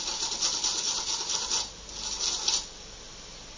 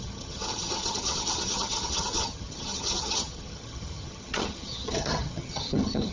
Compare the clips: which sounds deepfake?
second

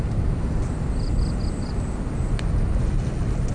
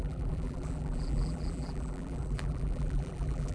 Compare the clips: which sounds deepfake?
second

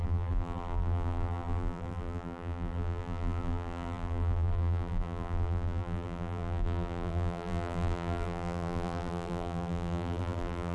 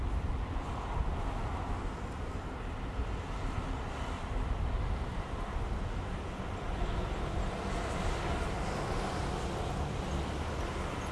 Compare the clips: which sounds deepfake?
first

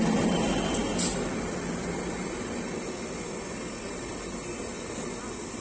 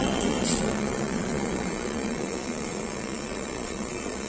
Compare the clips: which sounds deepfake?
second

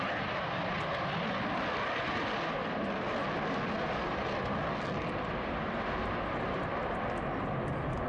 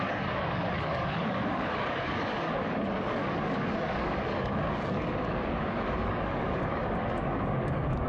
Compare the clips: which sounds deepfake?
second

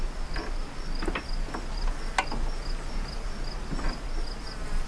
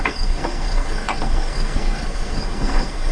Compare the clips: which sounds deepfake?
second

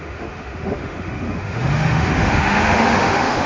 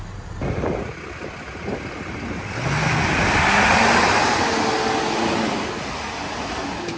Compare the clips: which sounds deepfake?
first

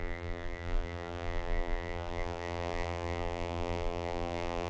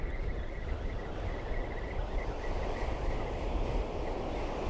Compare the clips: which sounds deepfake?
first